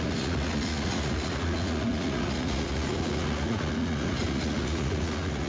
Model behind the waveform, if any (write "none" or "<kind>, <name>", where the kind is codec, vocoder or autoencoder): vocoder, Vocos